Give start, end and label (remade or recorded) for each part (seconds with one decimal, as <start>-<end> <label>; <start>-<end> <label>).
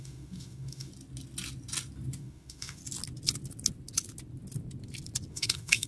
0.0-0.9 remade; 0.9-2.2 recorded; 2.2-2.8 remade; 2.8-5.3 recorded; 5.3-5.9 remade